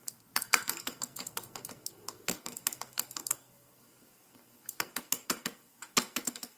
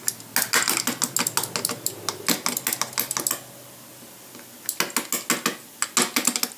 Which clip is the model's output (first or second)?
first